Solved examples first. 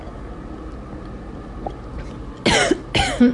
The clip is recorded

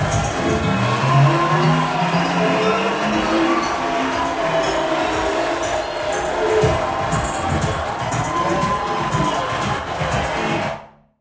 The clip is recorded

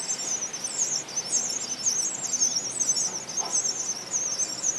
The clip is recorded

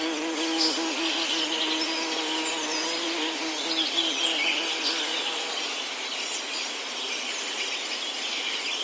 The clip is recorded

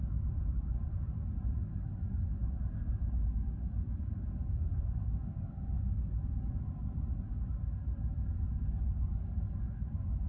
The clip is remade